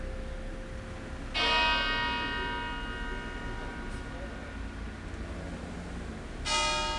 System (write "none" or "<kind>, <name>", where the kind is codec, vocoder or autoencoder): none